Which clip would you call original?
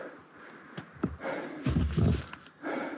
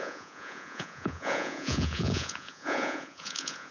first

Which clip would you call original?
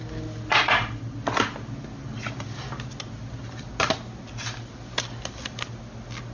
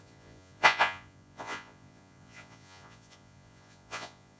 first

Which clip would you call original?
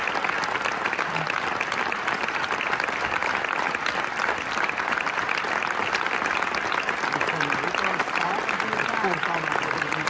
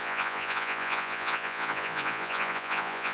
first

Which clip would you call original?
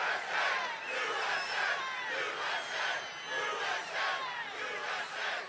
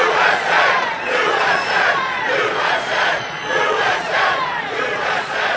first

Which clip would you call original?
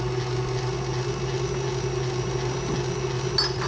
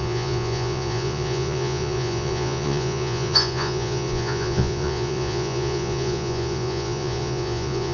first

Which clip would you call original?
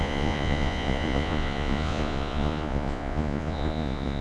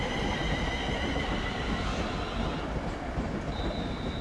second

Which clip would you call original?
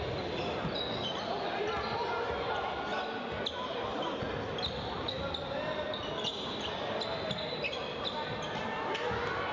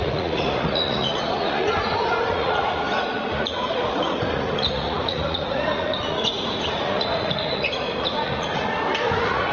first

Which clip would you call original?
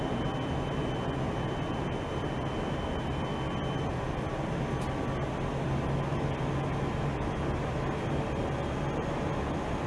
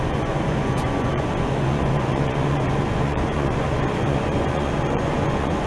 first